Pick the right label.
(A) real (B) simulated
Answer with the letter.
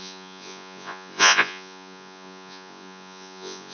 B